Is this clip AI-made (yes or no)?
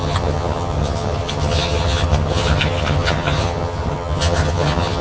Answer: yes